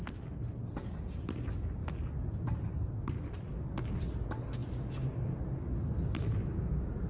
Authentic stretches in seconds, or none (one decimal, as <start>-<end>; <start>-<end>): 0.0-7.1